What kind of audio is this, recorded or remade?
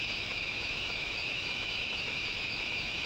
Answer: remade